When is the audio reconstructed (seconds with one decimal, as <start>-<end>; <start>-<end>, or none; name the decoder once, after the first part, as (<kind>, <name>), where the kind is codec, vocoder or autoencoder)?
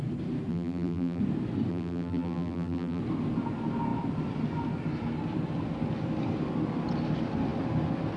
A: 0.5-1.2 (vocoder, BigVGAN v2); 1.7-3.0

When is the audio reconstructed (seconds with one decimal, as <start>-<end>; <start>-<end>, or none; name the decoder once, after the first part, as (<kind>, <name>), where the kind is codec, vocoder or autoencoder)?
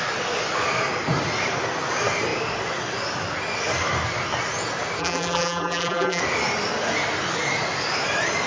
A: 5.0-6.2 (vocoder, BigVGAN v2)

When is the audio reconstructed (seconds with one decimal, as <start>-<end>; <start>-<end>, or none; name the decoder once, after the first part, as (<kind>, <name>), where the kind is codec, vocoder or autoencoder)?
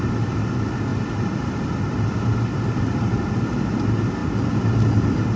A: 0.9-3.2 (vocoder, BigVGAN v2); 4.2-5.0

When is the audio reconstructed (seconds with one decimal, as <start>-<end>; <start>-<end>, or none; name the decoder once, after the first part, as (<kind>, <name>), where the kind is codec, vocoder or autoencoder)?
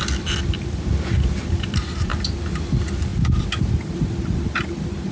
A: 0.0-2.1 (vocoder, BigVGAN v2); 2.7-3.1; 3.9-5.1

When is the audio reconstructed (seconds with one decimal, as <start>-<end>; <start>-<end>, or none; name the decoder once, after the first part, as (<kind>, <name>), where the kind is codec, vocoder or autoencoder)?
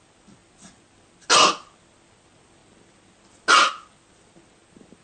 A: none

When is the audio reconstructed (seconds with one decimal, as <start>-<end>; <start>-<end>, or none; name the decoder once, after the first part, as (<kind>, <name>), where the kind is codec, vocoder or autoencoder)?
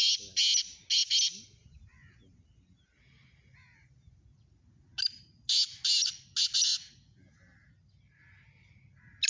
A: none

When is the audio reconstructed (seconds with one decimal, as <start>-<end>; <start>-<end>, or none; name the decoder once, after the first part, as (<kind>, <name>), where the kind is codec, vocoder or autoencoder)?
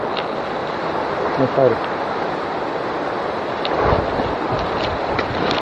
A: 0.6-4.0 (vocoder, BigVGAN v2)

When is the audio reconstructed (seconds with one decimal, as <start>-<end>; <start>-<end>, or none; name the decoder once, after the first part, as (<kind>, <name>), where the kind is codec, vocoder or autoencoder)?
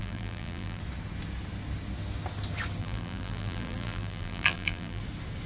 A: 0.0-0.8 (vocoder, BigVGAN v2); 2.8-5.0